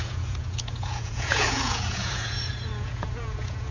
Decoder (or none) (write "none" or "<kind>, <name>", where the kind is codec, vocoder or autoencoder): vocoder, Vocos